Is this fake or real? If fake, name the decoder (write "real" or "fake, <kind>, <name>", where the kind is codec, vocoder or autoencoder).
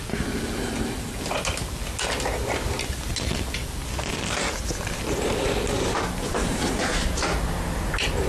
real